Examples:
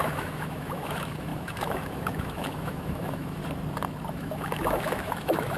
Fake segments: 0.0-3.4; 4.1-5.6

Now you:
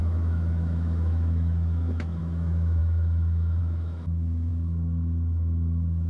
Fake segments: 0.0-6.1

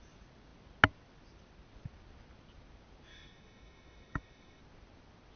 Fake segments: 3.1-4.6

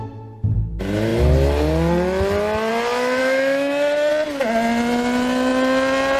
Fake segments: 3.2-4.1

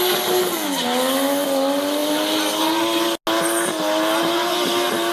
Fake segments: none

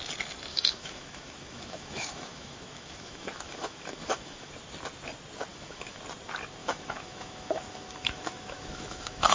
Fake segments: 0.5-4.5; 5.5-6.0; 6.6-9.3

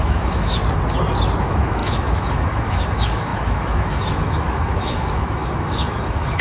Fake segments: 0.0-0.6; 1.4-6.4

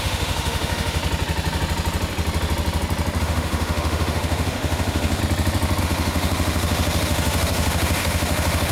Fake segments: 0.0-1.0; 3.2-5.2; 5.8-8.7